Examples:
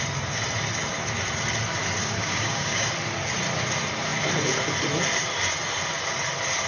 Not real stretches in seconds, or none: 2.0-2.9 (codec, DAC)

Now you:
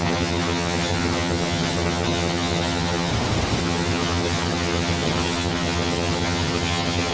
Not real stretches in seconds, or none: 0.0-3.1 (vocoder, HiFi-GAN); 3.6-7.1

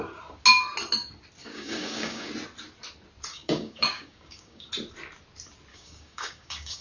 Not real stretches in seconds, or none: 1.4-2.3 (codec, DAC); 3.3-4.7; 5.7-6.8

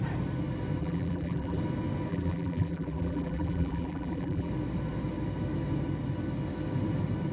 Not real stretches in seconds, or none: 0.8-1.6 (vocoder, BigVGAN v2); 2.1-4.5

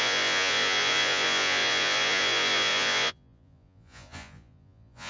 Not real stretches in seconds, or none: 0.0-5.1 (vocoder, Vocos)

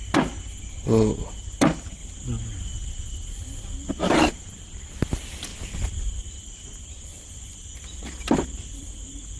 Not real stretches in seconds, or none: 7.1-9.4 (vocoder, BigVGAN v2)